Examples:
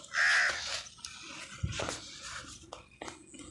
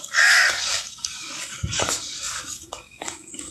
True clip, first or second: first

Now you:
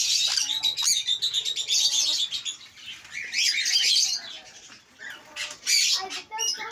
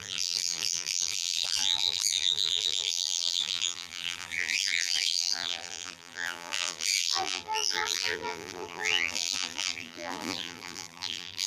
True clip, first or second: first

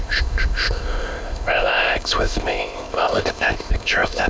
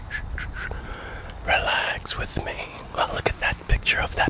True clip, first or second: second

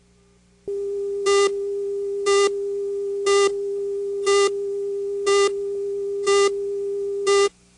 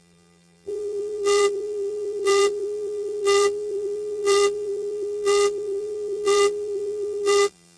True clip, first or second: first